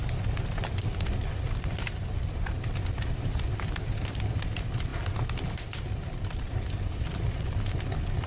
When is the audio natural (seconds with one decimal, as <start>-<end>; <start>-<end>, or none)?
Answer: 0.0-8.3